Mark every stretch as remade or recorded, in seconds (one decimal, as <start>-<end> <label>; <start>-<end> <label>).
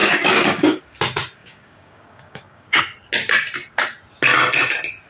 0.0-0.8 remade; 0.8-1.4 recorded; 1.4-2.8 remade; 2.8-5.1 recorded